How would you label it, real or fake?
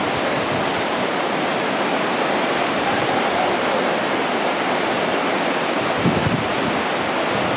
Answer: real